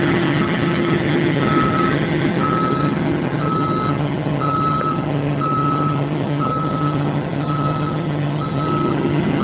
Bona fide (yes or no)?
no